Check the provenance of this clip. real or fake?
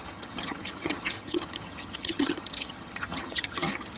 fake